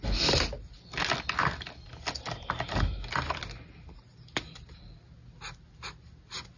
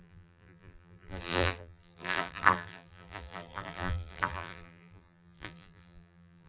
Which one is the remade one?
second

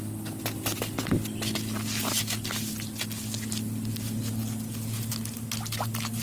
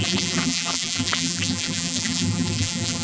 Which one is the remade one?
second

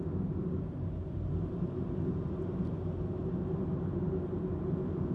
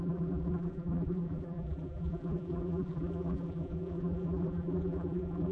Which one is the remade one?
second